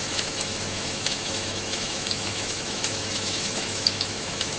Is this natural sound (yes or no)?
no